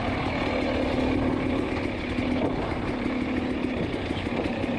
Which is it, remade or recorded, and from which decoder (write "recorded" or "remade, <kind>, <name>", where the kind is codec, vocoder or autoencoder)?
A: recorded